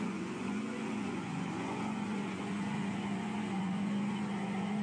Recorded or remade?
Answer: remade